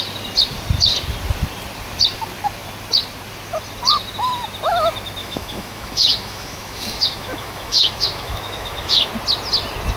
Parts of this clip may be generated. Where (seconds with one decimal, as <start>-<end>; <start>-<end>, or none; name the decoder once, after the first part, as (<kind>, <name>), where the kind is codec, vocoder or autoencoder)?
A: 5.2-9.1 (autoencoder, DAC-VAE)